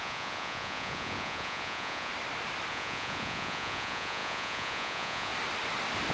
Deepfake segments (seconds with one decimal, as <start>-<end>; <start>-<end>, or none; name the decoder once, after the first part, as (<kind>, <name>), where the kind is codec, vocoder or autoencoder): 0.0-2.1 (vocoder, Vocos); 2.7-5.3